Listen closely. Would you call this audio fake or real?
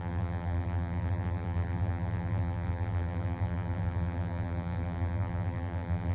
fake